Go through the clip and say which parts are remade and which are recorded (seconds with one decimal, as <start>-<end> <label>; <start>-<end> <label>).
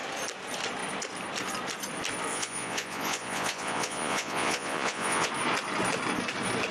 0.0-2.3 recorded; 2.3-5.3 remade; 5.3-6.7 recorded